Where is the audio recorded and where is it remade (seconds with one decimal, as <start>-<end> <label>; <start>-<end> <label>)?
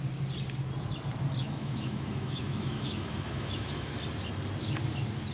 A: 0.0-1.4 recorded; 1.4-3.9 remade; 3.9-5.3 recorded